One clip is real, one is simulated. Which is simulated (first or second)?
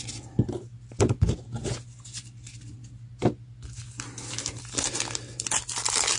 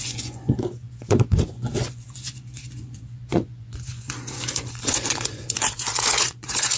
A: second